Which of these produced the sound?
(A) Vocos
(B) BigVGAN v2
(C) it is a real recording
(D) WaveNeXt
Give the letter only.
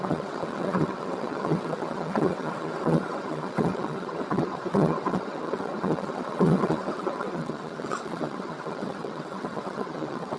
D